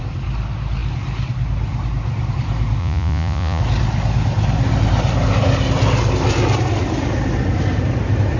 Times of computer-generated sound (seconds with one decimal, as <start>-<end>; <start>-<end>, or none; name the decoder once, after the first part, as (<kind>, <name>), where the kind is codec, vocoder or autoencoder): 2.8-3.6 (vocoder, Vocos)